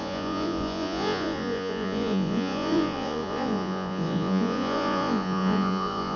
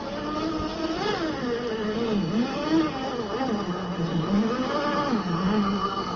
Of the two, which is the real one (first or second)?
second